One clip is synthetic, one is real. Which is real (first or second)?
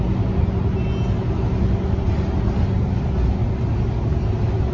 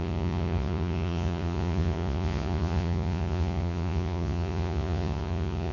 first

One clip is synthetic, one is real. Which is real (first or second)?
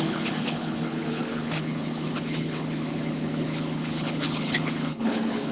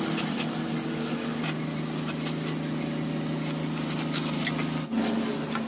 second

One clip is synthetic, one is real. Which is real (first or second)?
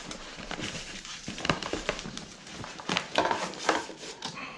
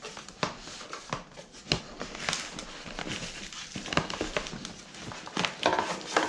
second